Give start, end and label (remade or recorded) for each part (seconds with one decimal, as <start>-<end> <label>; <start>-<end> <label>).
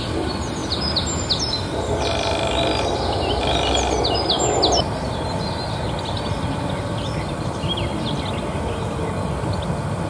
0.0-10.1 recorded